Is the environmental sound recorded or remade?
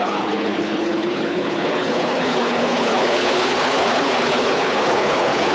remade